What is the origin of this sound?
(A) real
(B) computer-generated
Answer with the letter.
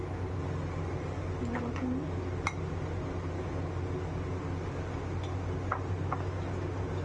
A